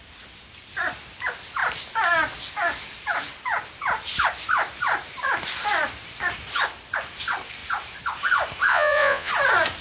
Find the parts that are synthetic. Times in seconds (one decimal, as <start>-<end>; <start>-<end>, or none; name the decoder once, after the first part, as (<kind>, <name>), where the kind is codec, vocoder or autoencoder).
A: 8.7-9.3 (vocoder, Vocos)

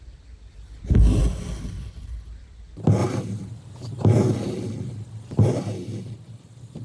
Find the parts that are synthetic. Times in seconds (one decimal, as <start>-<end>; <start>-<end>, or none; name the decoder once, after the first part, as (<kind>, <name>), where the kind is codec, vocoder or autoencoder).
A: none